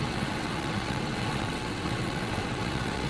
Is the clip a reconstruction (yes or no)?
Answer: yes